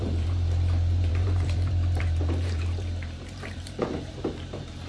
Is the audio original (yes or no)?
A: no